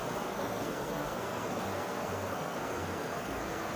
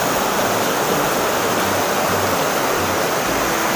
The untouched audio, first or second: second